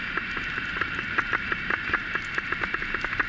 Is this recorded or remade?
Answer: recorded